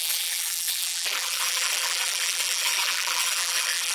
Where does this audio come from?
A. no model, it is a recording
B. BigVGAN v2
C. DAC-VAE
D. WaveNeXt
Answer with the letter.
B